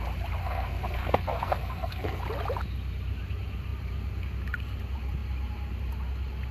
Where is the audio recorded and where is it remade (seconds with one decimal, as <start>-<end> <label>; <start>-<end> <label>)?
0.0-0.4 recorded; 0.4-2.2 remade; 2.2-6.5 recorded